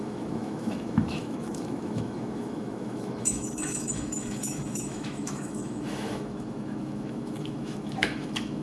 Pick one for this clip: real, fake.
fake